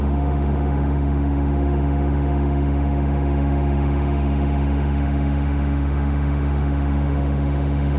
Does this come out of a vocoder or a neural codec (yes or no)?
yes